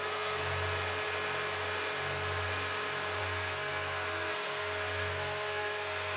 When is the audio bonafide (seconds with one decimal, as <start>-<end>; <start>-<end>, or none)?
0.4-3.2